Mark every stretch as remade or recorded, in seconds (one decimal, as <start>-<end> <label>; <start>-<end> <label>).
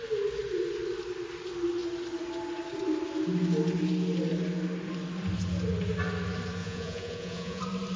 0.0-6.6 recorded; 6.6-7.6 remade; 7.6-8.0 recorded